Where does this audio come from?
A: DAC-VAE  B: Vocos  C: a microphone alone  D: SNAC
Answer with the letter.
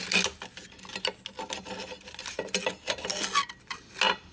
C